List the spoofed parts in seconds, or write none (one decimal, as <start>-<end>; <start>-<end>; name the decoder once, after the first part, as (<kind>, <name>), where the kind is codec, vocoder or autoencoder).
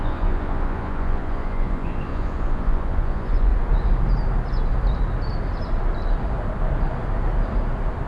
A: 0.0-3.5 (vocoder, Vocos)